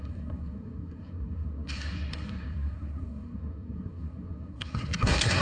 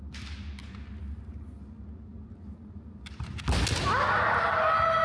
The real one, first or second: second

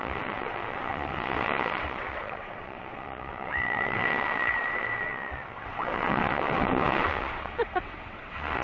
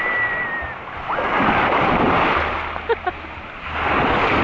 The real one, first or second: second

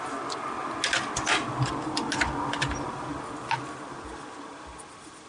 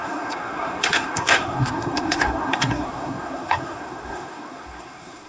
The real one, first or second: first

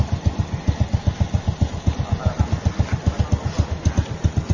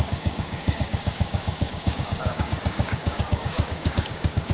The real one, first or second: first